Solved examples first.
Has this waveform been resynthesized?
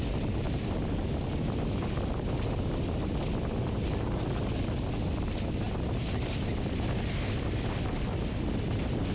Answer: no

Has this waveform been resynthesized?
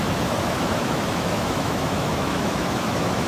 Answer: yes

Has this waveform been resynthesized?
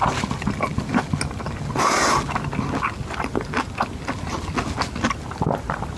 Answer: no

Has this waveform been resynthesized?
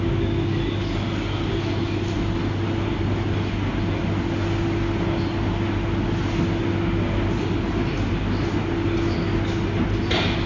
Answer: no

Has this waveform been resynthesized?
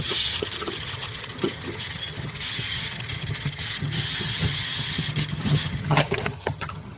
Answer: yes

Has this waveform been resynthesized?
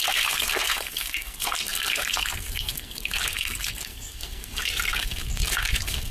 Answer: yes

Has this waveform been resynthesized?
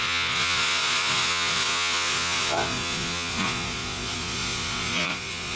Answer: yes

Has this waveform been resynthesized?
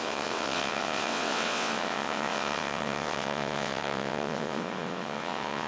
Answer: yes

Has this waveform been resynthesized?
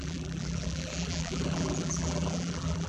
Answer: yes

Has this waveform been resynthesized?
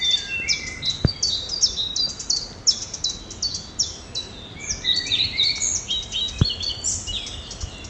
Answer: no